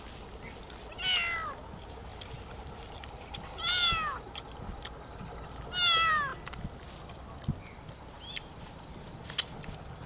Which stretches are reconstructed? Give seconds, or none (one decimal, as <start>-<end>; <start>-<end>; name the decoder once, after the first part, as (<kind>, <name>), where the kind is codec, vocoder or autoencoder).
2.1-3.9 (vocoder, BigVGAN v2)